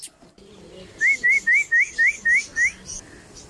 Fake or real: real